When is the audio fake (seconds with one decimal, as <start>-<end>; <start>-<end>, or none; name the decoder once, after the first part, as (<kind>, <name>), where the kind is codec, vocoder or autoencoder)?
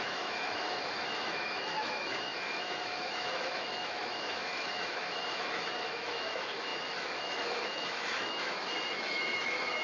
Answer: 0.0-9.8 (autoencoder, DAC-VAE)